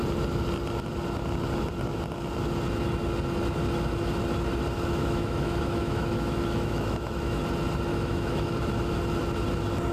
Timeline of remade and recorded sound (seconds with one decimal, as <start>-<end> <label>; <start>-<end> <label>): 0.0-5.0 recorded; 5.0-7.4 remade; 7.4-7.9 recorded; 7.9-9.0 remade; 9.0-9.9 recorded